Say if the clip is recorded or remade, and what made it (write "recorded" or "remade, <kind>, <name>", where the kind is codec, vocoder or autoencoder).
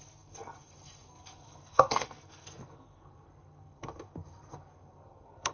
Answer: remade, codec, SNAC